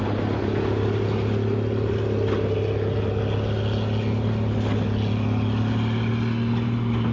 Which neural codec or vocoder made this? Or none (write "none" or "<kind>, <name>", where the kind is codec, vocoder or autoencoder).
none